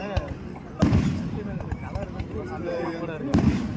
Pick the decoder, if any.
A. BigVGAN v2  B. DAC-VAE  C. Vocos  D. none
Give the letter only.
A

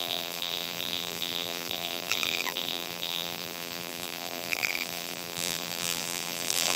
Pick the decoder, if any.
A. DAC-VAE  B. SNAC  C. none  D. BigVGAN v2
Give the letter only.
D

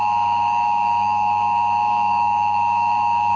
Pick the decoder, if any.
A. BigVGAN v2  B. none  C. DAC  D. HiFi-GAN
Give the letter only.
C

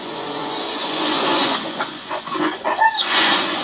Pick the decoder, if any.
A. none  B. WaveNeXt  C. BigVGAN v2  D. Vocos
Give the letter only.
D